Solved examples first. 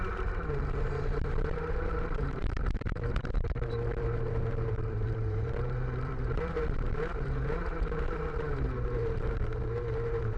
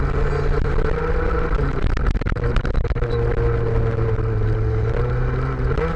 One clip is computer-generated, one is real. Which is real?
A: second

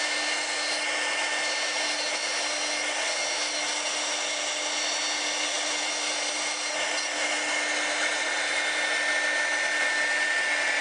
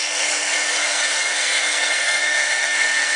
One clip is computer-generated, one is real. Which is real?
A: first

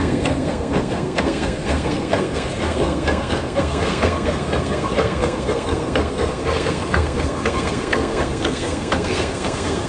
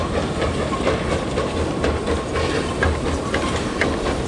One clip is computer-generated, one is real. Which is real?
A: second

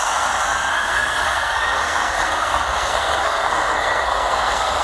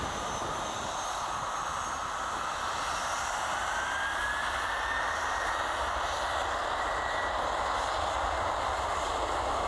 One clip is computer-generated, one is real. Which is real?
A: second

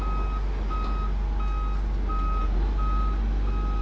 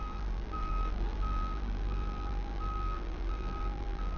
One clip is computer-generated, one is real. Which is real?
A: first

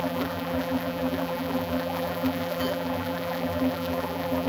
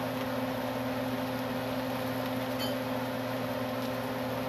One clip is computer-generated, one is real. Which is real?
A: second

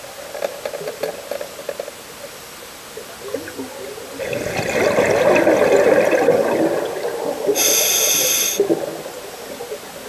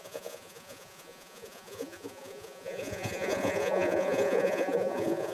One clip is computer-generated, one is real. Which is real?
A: first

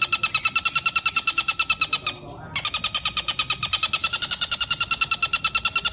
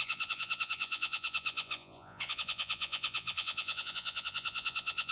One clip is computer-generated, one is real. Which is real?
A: first